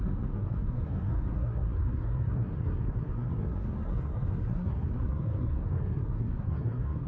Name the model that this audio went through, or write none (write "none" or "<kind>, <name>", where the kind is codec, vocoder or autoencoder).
codec, SNAC